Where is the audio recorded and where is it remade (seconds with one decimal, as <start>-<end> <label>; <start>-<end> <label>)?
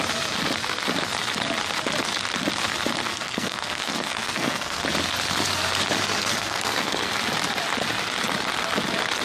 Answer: 0.0-3.1 recorded; 3.1-4.8 remade; 4.8-6.2 recorded; 6.2-7.1 remade; 7.1-9.2 recorded